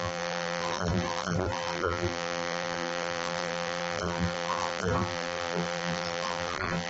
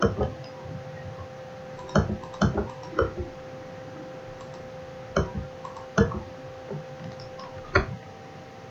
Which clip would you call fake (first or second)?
first